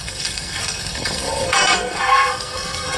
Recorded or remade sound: remade